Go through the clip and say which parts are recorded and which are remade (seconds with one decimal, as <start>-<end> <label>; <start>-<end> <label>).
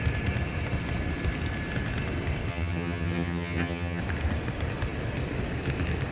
0.0-2.5 recorded; 2.5-4.0 remade; 4.0-6.1 recorded